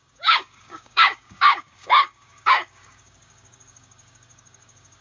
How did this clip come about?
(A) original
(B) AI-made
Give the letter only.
B